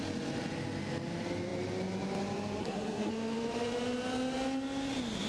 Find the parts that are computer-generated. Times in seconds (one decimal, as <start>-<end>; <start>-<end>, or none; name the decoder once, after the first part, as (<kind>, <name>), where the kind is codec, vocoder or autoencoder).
2.6-3.1 (codec, SNAC)